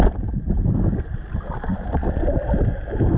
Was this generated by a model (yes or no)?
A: no